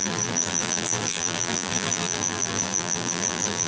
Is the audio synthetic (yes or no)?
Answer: yes